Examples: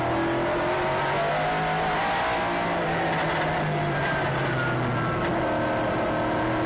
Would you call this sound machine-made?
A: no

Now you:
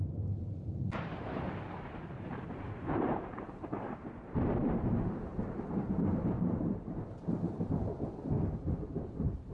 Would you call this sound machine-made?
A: yes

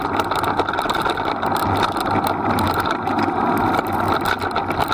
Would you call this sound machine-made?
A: no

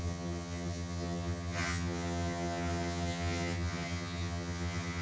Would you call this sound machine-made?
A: yes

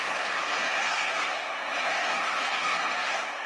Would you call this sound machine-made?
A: yes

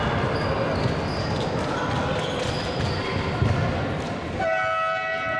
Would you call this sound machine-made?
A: no